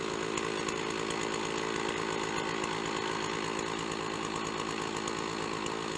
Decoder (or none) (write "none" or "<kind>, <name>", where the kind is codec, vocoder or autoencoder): none